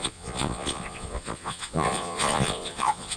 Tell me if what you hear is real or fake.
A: fake